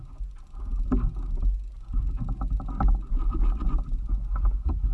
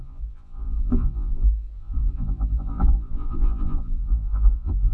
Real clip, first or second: first